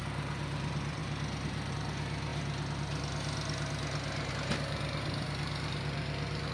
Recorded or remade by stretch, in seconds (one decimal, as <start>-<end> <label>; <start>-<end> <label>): 0.0-6.5 recorded

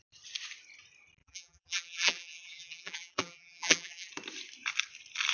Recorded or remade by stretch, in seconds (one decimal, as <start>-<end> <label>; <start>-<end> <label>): 0.0-1.2 recorded; 1.2-4.1 remade; 4.1-5.3 recorded

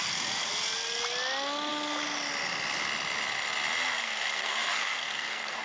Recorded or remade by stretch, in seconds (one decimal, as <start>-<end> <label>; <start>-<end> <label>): 0.0-4.0 recorded; 4.0-5.6 remade

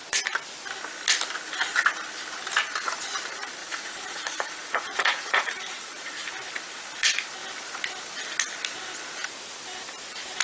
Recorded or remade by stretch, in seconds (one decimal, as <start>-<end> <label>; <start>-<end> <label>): 0.0-3.6 recorded; 3.6-6.3 remade; 6.3-10.4 recorded

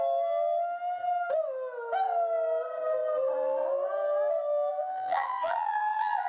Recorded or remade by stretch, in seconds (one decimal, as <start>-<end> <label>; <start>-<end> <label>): 0.0-4.7 recorded; 4.7-6.3 remade

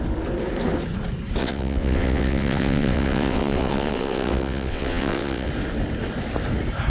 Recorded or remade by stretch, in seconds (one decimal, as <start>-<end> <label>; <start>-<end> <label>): 0.0-1.4 recorded; 1.4-5.5 remade; 5.5-6.9 recorded

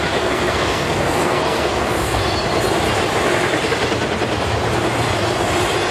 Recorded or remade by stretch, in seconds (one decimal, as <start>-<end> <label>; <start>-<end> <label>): 0.0-2.2 remade; 2.2-5.9 recorded